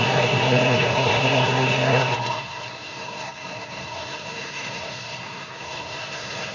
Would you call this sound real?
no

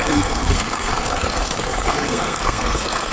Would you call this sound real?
no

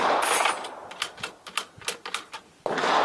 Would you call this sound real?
yes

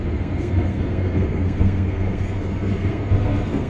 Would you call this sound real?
no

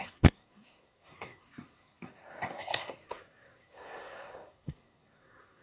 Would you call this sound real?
no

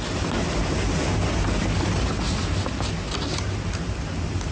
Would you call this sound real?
yes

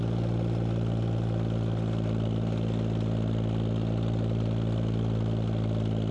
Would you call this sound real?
yes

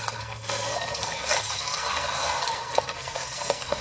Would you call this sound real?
no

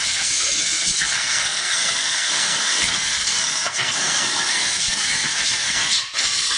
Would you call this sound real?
no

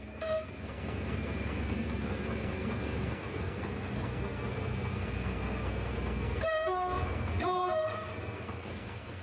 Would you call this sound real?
no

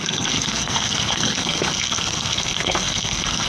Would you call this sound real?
no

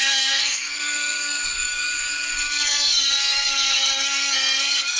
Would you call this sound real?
no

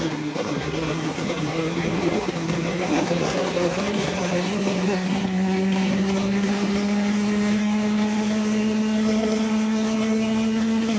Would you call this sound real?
no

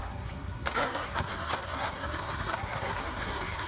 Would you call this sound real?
no